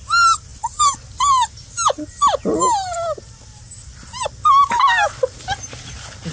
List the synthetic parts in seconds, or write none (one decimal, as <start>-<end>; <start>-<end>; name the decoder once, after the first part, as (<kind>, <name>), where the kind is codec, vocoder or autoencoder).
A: none